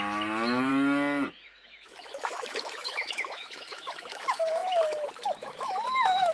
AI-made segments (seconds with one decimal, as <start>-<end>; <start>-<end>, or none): 0.0-0.7; 1.3-6.3